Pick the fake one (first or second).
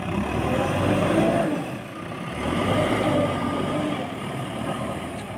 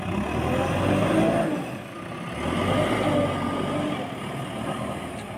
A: first